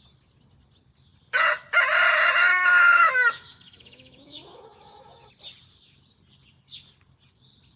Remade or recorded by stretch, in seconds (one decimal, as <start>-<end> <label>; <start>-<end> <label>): 0.0-2.5 recorded; 2.5-5.3 remade; 5.3-7.8 recorded